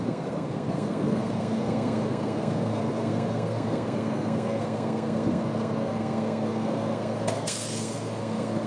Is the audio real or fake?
fake